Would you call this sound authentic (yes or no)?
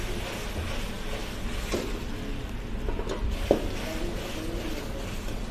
yes